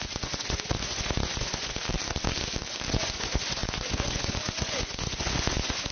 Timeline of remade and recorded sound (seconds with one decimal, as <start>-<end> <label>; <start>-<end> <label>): 0.0-1.8 remade; 1.8-2.9 recorded; 2.9-5.9 remade